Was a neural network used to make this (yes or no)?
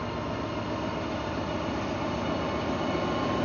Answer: no